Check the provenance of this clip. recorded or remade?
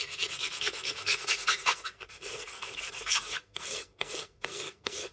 remade